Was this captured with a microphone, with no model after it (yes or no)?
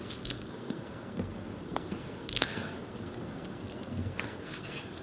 no